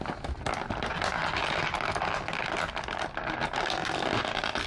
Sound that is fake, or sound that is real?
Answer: real